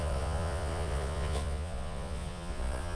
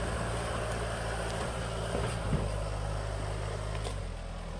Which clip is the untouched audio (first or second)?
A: second